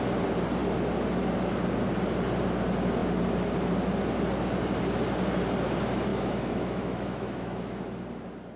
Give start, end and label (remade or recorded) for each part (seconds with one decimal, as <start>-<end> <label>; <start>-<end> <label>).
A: 0.0-6.1 recorded; 6.1-7.8 remade; 7.8-8.6 recorded